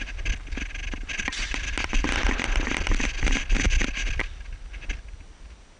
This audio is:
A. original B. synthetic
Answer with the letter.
A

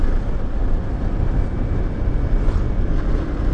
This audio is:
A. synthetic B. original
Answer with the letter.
B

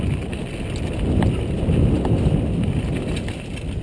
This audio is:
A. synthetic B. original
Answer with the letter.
B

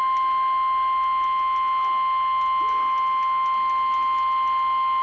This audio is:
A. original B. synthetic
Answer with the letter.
A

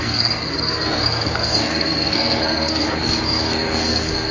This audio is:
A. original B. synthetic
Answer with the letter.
B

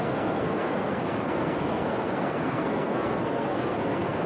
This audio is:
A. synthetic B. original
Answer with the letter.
A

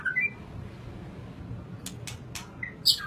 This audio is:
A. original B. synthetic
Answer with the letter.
A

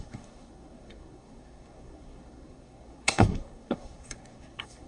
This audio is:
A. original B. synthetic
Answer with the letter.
B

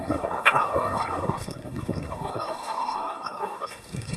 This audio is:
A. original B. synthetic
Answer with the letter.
B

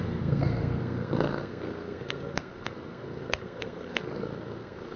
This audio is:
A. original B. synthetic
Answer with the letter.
B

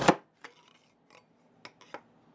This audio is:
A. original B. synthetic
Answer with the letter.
A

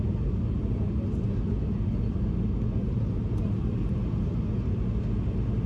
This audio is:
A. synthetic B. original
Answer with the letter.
B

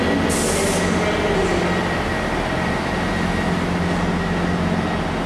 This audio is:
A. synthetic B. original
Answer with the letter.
B